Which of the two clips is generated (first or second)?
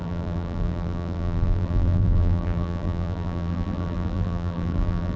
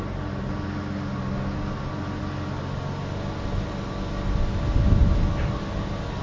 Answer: first